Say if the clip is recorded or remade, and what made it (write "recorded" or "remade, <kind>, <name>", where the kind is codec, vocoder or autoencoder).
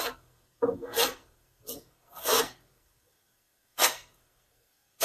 remade, codec, SNAC